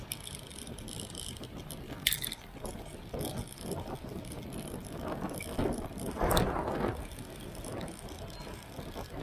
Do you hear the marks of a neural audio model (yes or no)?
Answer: no